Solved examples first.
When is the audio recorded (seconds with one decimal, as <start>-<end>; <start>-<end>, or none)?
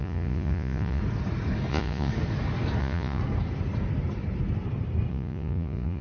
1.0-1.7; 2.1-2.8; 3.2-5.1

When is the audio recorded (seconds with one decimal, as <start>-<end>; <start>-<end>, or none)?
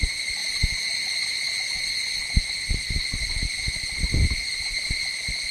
0.0-5.5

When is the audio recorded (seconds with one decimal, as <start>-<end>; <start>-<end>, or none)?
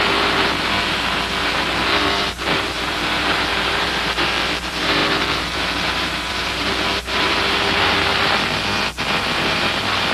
8.1-9.2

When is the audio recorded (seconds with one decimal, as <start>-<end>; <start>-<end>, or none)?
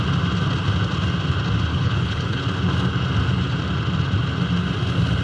0.0-1.7; 2.4-5.2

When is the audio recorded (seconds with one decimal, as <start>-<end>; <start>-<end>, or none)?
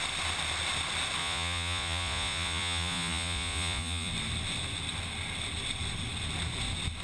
0.0-1.2; 4.1-7.0